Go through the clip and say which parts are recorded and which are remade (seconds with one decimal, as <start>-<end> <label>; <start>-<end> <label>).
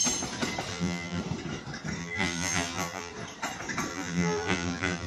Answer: 0.0-0.7 recorded; 0.7-1.2 remade; 1.2-2.0 recorded; 2.0-3.1 remade; 3.1-3.9 recorded; 3.9-5.1 remade